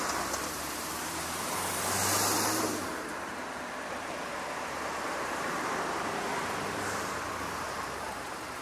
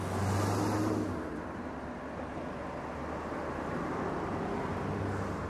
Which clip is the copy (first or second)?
first